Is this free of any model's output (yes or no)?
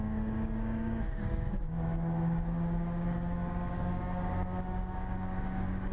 no